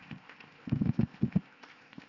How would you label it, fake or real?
fake